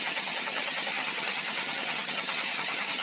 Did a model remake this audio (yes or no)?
yes